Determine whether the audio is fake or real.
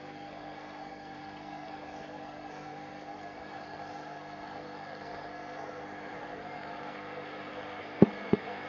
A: fake